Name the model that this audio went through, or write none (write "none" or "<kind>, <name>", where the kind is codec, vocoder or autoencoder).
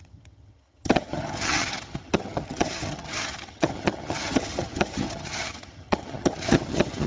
vocoder, HiFi-GAN